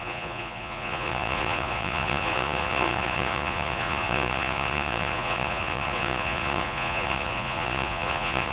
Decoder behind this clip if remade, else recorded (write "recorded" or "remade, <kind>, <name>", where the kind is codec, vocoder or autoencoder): remade, vocoder, Vocos